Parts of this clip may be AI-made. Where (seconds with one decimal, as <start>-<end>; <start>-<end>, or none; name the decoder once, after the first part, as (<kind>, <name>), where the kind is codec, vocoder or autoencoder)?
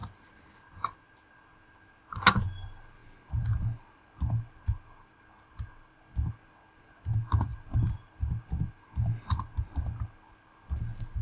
none